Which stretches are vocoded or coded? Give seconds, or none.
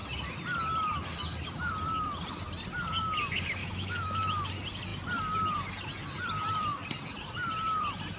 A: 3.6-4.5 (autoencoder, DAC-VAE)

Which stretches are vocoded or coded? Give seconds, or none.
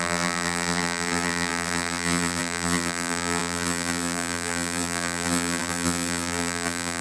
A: 0.0-7.0 (vocoder, BigVGAN v2)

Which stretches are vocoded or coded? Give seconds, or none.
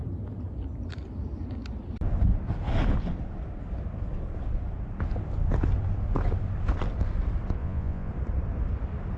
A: 7.6-8.1 (vocoder, Vocos)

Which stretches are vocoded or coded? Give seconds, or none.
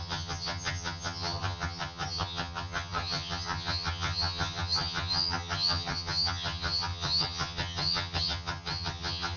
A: 0.0-9.4 (vocoder, HiFi-GAN)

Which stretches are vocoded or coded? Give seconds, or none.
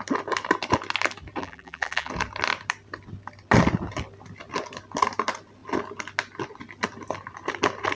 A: 1.4-2.1 (vocoder, BigVGAN v2)